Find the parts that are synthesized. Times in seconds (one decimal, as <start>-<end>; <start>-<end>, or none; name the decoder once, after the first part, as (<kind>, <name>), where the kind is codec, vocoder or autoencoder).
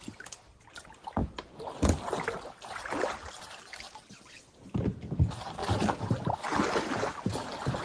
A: none